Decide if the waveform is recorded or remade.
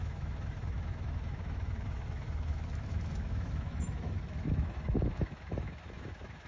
remade